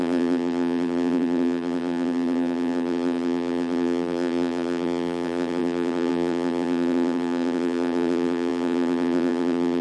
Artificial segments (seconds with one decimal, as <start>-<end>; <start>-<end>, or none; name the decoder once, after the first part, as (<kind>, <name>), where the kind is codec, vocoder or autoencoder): 0.0-9.8 (vocoder, BigVGAN v2)